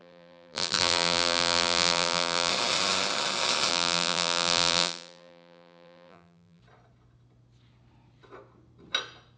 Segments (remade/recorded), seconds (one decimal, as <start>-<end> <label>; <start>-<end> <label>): 0.0-2.5 remade; 2.5-3.7 recorded; 3.7-6.6 remade; 6.6-9.4 recorded